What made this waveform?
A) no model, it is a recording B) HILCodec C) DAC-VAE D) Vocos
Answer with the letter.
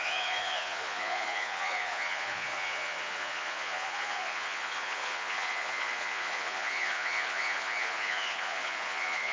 D